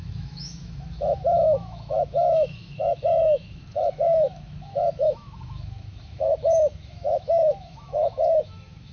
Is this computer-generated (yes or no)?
yes